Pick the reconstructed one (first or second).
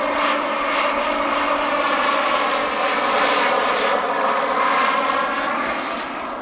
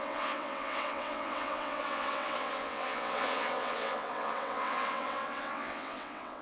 second